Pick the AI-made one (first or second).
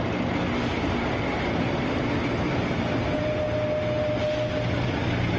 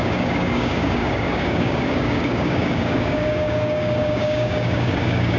second